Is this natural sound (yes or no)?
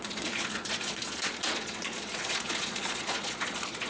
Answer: no